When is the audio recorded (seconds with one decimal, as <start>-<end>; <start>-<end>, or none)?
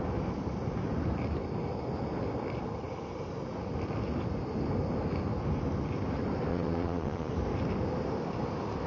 0.0-6.5; 7.3-8.9